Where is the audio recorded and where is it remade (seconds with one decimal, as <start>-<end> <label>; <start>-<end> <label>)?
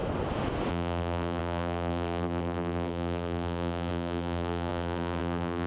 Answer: 0.0-0.7 recorded; 0.7-5.7 remade